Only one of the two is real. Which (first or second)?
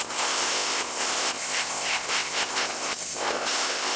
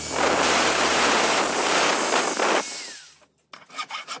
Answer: second